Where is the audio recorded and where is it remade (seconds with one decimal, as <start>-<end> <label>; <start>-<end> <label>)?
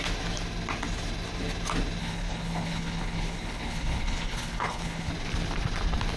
0.0-2.0 recorded; 2.0-5.1 remade; 5.1-6.2 recorded